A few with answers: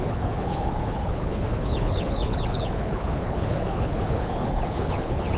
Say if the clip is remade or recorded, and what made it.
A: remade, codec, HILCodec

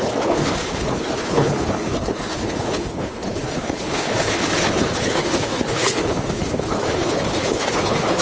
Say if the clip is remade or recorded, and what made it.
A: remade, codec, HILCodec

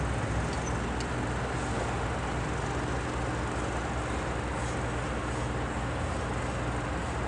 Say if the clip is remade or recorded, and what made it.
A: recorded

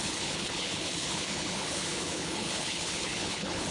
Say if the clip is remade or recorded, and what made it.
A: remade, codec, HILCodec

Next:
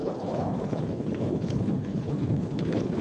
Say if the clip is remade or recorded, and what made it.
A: remade, codec, HILCodec